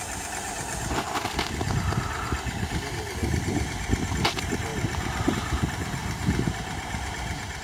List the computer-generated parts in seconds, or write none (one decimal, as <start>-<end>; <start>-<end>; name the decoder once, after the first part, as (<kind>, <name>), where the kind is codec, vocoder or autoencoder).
0.0-1.2 (vocoder, BigVGAN v2); 2.0-3.2; 4.3-4.7; 5.3-7.6